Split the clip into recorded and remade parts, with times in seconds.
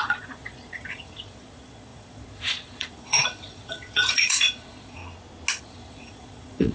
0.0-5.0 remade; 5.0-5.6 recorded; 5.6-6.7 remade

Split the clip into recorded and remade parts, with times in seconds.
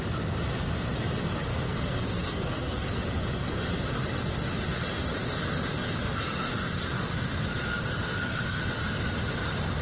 0.0-1.5 recorded; 1.5-3.0 remade; 3.0-7.9 recorded; 7.9-8.6 remade; 8.6-9.8 recorded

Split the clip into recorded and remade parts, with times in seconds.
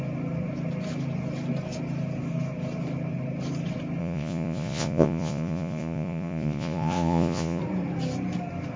0.0-4.0 recorded; 4.0-7.6 remade; 7.6-8.8 recorded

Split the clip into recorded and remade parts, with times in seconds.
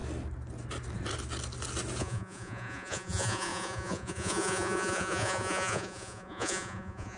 0.0-2.0 recorded; 2.0-7.2 remade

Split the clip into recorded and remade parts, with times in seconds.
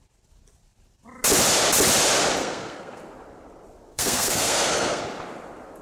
0.0-2.4 recorded; 2.4-3.0 remade; 3.0-3.9 recorded; 3.9-5.0 remade; 5.0-5.8 recorded